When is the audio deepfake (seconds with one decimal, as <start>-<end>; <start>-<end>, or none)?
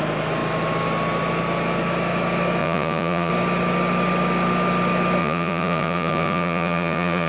2.6-3.3; 5.2-7.3